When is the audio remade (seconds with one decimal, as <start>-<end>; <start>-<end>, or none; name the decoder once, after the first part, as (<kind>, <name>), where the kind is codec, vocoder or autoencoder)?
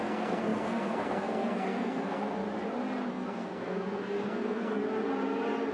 0.0-2.4 (codec, SNAC); 3.1-4.8